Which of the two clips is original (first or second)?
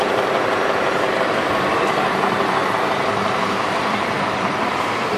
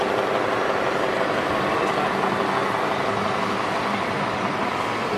second